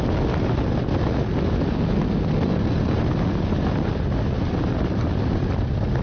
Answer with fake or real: real